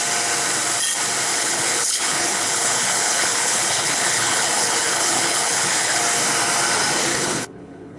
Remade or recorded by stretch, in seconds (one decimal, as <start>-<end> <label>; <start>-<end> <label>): 0.0-1.3 recorded; 1.3-6.0 remade; 6.0-7.1 recorded; 7.1-8.0 remade